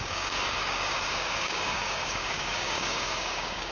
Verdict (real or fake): fake